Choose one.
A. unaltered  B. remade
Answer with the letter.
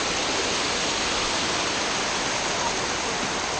A